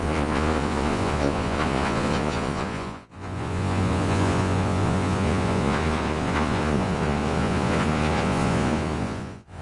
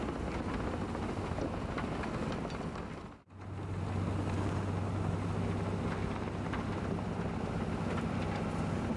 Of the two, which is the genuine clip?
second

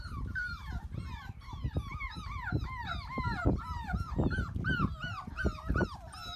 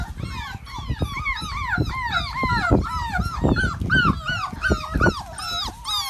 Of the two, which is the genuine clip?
second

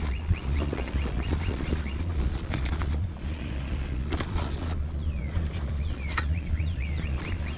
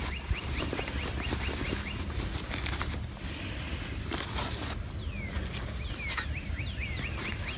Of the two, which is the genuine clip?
second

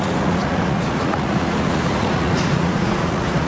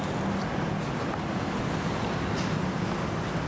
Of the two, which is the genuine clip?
second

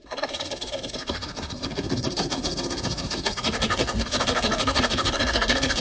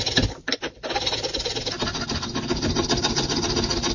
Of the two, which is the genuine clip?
second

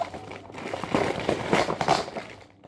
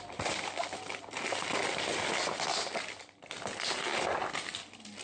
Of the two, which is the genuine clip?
second